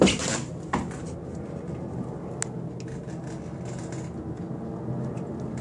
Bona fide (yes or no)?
yes